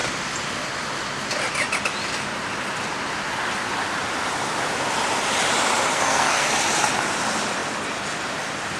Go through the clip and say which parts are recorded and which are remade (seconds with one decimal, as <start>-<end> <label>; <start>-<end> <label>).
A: 0.0-5.9 recorded; 5.9-6.5 remade; 6.5-8.8 recorded